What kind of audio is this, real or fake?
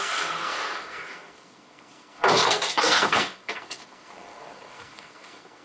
fake